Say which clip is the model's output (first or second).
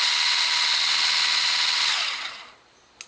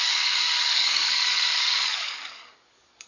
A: second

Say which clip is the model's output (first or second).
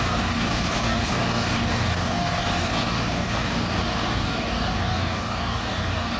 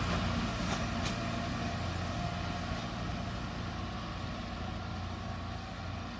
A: first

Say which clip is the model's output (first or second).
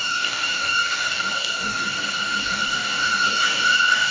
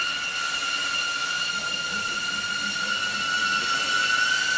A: first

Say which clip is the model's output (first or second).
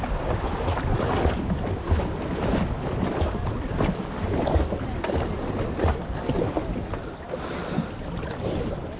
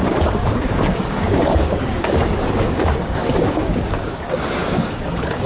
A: second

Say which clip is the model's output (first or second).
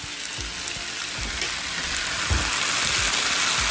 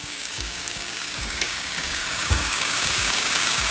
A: second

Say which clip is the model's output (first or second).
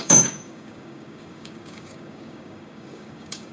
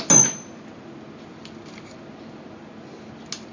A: first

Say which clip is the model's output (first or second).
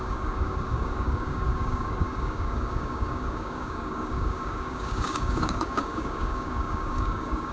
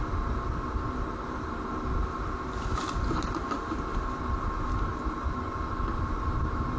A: first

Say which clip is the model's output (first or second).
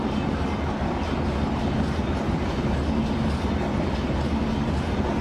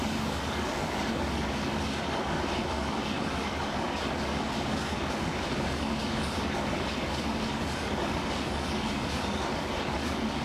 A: second